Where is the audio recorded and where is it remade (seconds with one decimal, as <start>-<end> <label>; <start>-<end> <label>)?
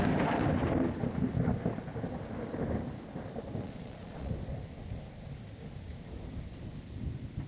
0.0-3.6 recorded; 3.6-4.3 remade; 4.3-7.5 recorded